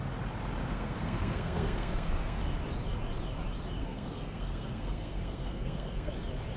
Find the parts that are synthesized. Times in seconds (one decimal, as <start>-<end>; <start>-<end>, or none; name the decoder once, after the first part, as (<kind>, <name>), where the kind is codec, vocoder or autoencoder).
0.6-2.4 (codec, SNAC); 3.8-6.1